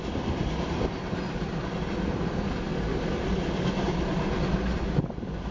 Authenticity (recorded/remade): recorded